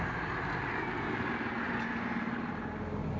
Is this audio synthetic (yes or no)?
no